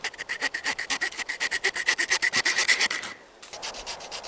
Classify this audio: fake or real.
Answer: real